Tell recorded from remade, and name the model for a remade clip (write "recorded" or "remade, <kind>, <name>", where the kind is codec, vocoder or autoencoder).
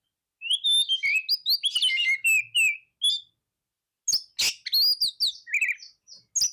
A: recorded